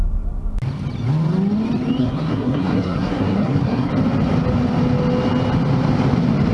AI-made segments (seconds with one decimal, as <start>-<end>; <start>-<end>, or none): 2.0-3.9